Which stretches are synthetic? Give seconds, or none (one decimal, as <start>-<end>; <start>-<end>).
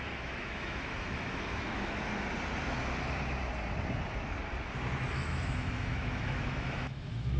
0.0-2.1; 5.1-7.4